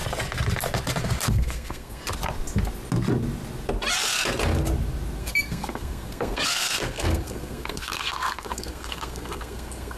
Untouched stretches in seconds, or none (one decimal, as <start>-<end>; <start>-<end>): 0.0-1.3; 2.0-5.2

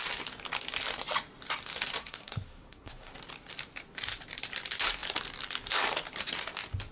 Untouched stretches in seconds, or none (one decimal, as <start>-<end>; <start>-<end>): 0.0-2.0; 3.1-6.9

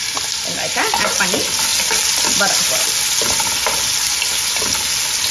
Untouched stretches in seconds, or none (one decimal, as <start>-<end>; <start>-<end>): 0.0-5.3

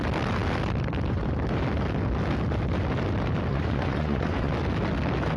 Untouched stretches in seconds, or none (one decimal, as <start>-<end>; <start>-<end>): 0.0-3.5; 4.5-5.4

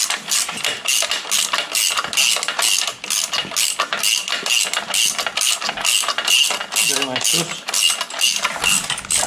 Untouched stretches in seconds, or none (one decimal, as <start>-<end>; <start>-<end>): 0.0-9.3

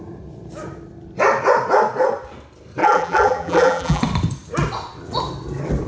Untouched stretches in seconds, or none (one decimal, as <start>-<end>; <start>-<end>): 0.0-2.8; 4.0-5.9